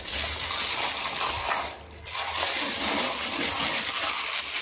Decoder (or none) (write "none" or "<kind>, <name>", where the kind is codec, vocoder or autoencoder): none